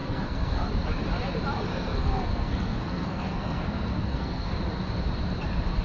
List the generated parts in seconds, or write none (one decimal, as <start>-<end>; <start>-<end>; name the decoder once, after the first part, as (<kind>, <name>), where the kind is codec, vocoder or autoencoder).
0.0-0.7 (codec, SNAC); 1.7-4.5